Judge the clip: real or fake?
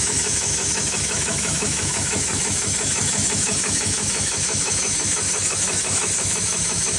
fake